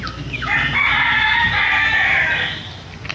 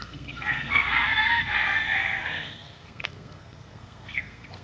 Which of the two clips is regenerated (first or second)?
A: second